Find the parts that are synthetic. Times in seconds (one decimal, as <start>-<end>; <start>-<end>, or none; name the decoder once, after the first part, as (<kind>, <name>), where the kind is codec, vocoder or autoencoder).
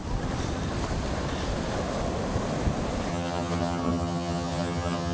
3.1-5.1 (vocoder, HiFi-GAN)